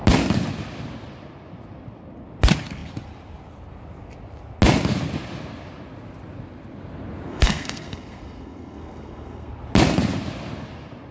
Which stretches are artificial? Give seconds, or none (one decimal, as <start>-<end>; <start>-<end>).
7.3-9.5